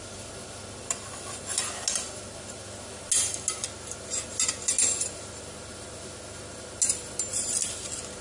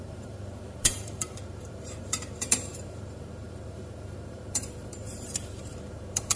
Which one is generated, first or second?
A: second